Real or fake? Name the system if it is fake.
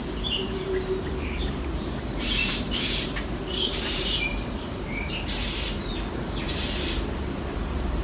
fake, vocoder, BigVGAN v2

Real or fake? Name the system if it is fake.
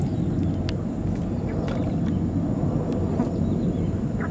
real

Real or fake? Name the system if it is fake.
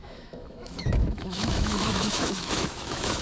fake, autoencoder, DAC-VAE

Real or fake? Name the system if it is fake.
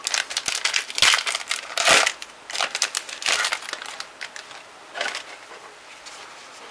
real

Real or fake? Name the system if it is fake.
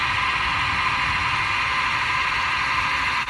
real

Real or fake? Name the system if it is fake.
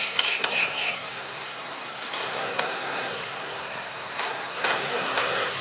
fake, codec, SNAC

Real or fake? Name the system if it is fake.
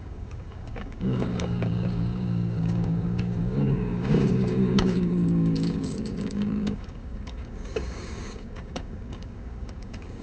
fake, codec, DAC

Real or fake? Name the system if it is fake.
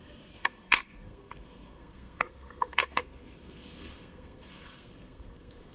fake, codec, SNAC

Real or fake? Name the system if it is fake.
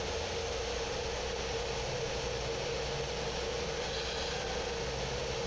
real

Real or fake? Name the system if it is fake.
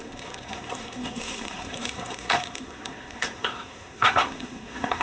fake, codec, SNAC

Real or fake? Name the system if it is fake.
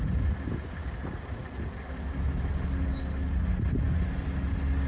real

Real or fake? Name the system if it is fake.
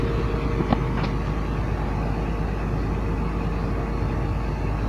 real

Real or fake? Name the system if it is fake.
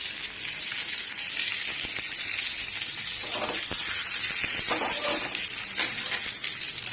real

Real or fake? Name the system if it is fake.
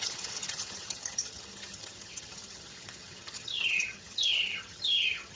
fake, vocoder, HiFi-GAN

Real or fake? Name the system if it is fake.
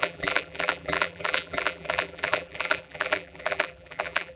fake, vocoder, BigVGAN v2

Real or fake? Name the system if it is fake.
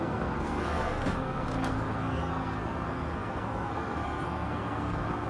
fake, codec, SNAC